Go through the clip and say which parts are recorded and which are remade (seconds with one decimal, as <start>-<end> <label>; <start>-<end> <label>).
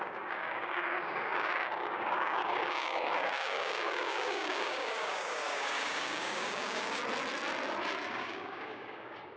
0.0-7.0 remade; 7.0-8.1 recorded; 8.1-9.4 remade